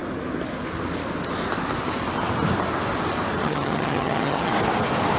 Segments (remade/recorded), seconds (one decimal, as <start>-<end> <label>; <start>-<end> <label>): 0.0-3.4 recorded; 3.4-4.5 remade; 4.5-5.2 recorded

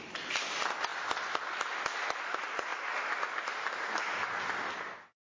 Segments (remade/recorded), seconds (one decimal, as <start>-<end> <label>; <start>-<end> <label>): 0.0-5.4 recorded

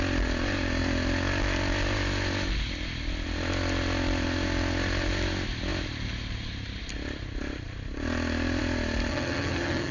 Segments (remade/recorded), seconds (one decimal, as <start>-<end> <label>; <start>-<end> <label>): 0.0-9.1 recorded; 9.1-9.9 remade

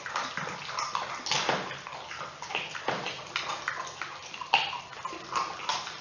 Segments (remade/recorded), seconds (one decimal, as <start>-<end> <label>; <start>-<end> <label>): 0.0-6.0 recorded

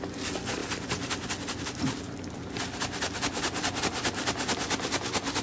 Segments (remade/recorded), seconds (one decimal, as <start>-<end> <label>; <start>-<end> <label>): 0.0-5.4 recorded

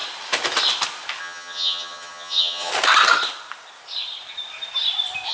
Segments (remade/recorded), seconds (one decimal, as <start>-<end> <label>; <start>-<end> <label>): 0.0-1.2 recorded; 1.2-2.7 remade; 2.7-5.3 recorded

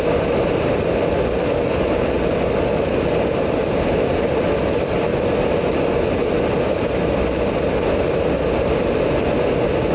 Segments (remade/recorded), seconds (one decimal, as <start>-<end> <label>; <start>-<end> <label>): 0.0-9.9 recorded

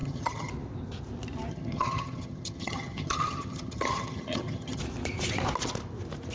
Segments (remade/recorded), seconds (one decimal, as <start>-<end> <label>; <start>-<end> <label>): 0.0-0.5 remade; 0.5-1.5 recorded; 1.5-4.8 remade; 4.8-6.3 recorded